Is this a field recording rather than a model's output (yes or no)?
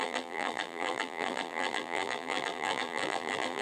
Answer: no